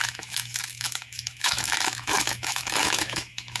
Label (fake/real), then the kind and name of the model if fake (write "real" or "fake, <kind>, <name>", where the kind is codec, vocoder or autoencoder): fake, autoencoder, DAC-VAE